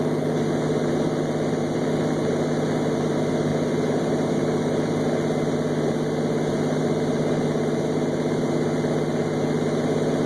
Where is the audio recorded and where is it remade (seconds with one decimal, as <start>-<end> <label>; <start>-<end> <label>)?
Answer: 0.0-10.3 recorded

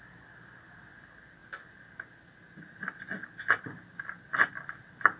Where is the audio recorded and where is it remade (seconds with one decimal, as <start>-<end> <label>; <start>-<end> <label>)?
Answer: 0.0-5.2 recorded

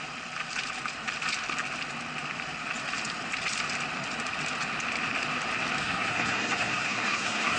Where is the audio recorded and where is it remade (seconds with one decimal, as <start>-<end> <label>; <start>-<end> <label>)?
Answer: 0.0-5.8 recorded; 5.8-7.6 remade

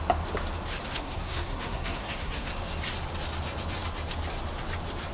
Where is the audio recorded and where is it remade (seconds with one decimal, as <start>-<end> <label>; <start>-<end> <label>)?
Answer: 0.0-0.9 recorded; 0.9-2.5 remade; 2.5-5.1 recorded

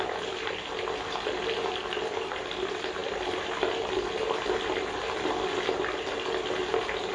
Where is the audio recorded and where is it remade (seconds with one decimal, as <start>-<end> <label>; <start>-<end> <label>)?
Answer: 0.0-7.1 recorded

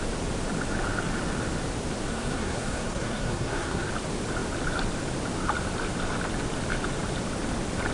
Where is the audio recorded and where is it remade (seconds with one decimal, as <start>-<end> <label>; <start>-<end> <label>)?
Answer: 0.0-2.1 recorded; 2.1-3.9 remade; 3.9-7.9 recorded

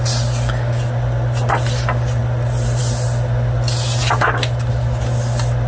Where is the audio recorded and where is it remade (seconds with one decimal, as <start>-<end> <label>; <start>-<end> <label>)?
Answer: 0.0-5.7 recorded

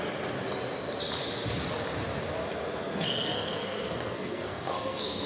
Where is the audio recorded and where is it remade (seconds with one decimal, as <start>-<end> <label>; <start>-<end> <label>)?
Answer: 0.0-2.9 recorded; 2.9-5.3 remade